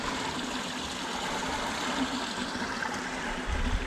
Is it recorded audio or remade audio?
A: recorded